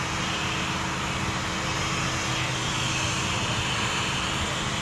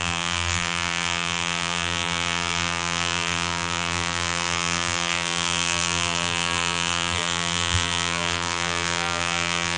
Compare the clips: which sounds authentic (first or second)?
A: first